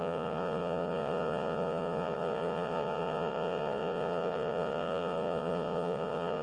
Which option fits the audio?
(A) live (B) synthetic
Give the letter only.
B